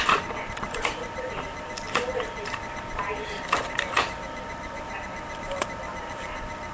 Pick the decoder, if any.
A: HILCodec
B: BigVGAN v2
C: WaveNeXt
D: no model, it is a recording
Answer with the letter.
B